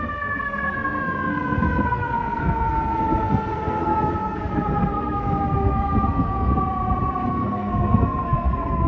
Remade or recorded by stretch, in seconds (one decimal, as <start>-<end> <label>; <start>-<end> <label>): 0.0-6.5 remade; 6.5-7.3 recorded; 7.3-8.9 remade